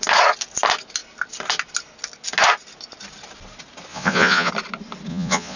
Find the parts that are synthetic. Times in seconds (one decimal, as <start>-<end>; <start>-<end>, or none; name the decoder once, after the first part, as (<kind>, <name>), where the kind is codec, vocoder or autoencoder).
3.9-4.5 (vocoder, Vocos); 5.1-5.6